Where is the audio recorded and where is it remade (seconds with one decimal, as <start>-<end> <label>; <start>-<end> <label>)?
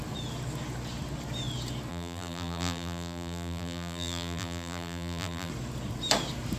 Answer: 0.0-1.9 recorded; 1.9-5.5 remade; 5.5-6.6 recorded